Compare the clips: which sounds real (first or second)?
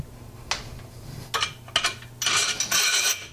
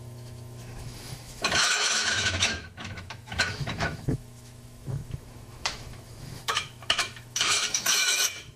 first